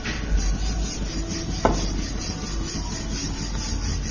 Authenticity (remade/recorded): recorded